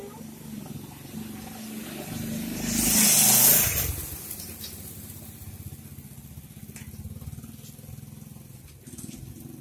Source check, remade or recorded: recorded